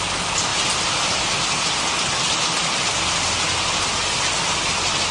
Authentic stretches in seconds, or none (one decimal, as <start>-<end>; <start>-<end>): 0.0-5.1